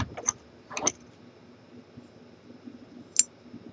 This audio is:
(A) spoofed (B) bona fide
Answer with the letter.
B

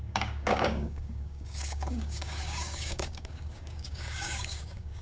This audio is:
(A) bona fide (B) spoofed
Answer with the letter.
B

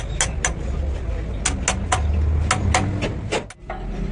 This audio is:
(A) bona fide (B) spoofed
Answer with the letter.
A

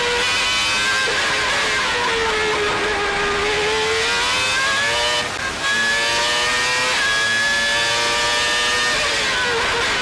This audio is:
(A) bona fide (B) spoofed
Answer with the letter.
A